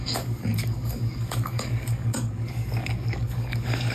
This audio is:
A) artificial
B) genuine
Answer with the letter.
A